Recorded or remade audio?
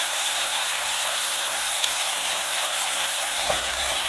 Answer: remade